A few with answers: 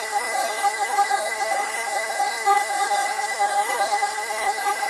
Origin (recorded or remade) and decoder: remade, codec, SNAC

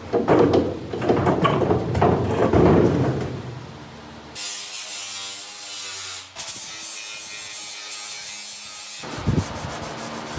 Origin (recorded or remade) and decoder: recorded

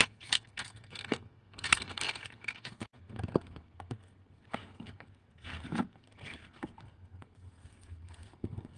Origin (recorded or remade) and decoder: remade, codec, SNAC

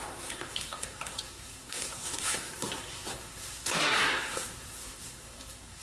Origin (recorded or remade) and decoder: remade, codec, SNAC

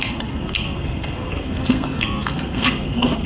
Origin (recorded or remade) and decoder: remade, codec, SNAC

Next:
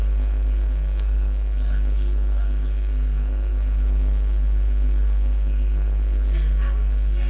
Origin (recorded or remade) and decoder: remade, codec, SNAC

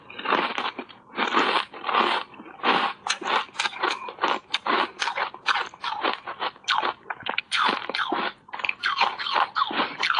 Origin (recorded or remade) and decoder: recorded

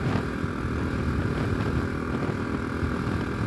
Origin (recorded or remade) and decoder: recorded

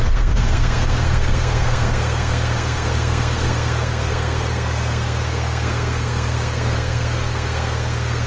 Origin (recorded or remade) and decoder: remade, codec, SNAC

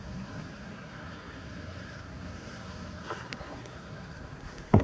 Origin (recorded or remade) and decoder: remade, codec, SNAC